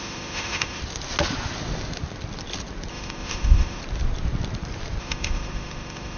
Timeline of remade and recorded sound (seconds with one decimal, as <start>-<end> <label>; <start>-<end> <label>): 0.0-0.8 remade; 0.8-2.9 recorded; 2.9-3.8 remade; 3.8-5.0 recorded; 5.0-6.2 remade